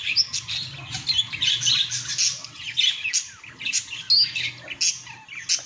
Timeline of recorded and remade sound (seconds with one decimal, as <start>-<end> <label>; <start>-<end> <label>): 0.0-5.7 recorded